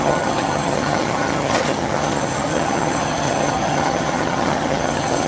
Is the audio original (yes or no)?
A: no